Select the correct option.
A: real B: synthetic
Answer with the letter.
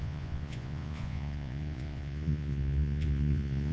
B